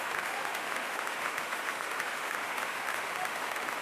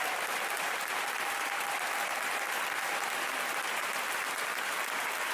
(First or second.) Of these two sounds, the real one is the second